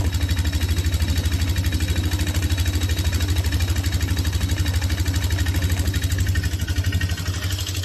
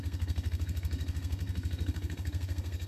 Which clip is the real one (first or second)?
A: first